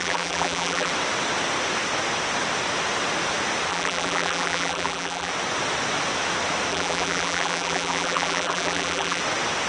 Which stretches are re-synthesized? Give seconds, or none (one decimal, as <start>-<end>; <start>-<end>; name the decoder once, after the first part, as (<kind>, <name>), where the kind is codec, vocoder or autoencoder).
0.0-0.9 (vocoder, BigVGAN v2); 3.7-5.3; 6.7-9.2